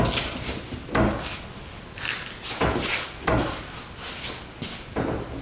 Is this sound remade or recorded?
recorded